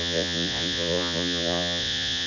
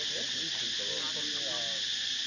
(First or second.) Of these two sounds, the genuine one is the second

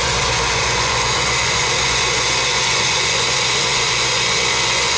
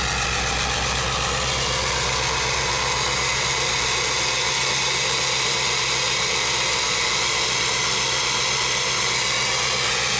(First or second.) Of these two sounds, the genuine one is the second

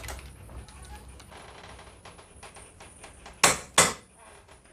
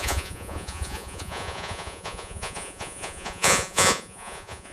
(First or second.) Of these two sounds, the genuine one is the first